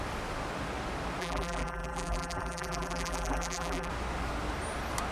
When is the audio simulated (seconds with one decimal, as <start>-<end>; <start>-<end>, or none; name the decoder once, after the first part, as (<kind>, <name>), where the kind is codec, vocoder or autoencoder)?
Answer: 1.2-3.9 (vocoder, BigVGAN v2)